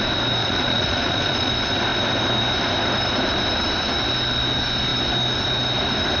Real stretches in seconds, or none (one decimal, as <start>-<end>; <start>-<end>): 0.0-0.4; 1.5-6.2